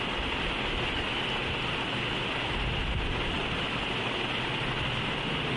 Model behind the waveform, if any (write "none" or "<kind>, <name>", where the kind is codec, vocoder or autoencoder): none